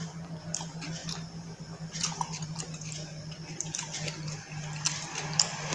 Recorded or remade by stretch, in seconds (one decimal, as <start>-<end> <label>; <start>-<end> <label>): 0.0-1.0 recorded; 1.0-1.6 remade; 1.6-5.7 recorded